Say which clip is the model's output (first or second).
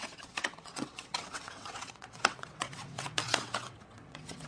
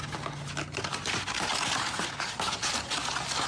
first